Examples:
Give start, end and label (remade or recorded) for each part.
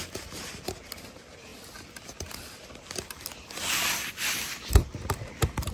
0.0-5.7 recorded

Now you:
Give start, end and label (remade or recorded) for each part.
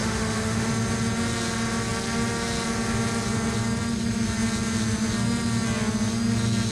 0.0-0.7 remade; 0.7-6.7 recorded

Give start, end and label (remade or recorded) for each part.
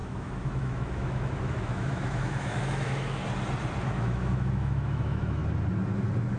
0.0-3.2 remade; 3.2-3.8 recorded; 3.8-5.4 remade; 5.4-6.4 recorded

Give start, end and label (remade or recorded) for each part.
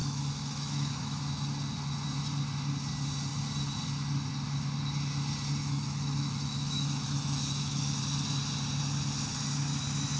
0.0-1.2 remade; 1.2-5.6 recorded; 5.6-8.0 remade; 8.0-10.2 recorded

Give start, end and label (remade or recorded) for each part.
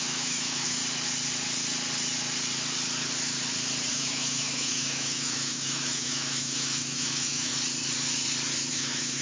0.0-0.8 remade; 0.8-3.9 recorded; 3.9-7.5 remade; 7.5-8.7 recorded; 8.7-9.2 remade